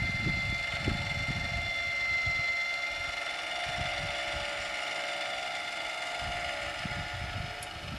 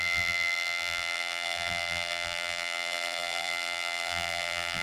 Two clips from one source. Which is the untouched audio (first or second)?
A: first